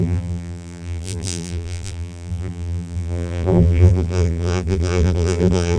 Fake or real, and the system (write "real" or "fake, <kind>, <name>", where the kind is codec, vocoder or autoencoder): fake, vocoder, BigVGAN v2